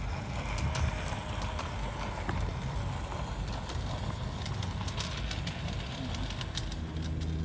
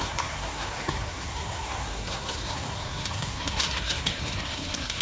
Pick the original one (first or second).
first